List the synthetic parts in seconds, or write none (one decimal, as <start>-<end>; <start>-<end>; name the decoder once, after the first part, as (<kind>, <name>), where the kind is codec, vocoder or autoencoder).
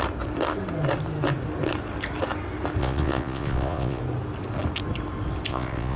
2.8-4.0 (vocoder, Vocos); 5.5-6.0